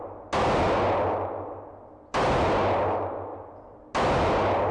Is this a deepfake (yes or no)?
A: no